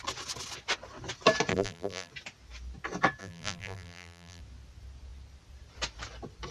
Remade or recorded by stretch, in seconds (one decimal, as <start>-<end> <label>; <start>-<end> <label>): 0.0-1.5 recorded; 1.5-2.1 remade; 2.1-3.2 recorded; 3.2-4.4 remade; 4.4-6.5 recorded